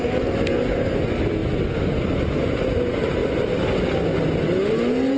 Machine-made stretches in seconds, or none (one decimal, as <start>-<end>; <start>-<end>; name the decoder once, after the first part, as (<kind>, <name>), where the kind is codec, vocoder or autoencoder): none